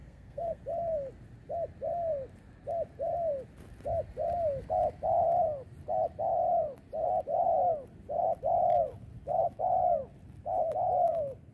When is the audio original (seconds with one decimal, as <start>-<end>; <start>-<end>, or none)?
0.6-11.5